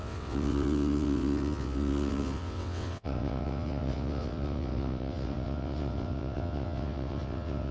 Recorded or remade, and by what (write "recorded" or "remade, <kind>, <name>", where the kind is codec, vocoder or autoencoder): remade, vocoder, WaveNeXt